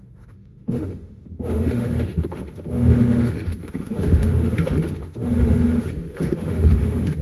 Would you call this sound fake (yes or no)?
yes